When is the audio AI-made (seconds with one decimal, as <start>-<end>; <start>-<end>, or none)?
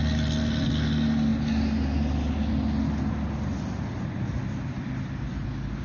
none